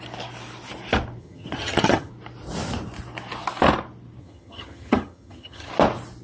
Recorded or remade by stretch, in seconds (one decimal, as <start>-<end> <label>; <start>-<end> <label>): 0.0-1.2 recorded; 1.2-2.1 remade; 2.1-4.2 recorded; 4.2-5.7 remade; 5.7-6.2 recorded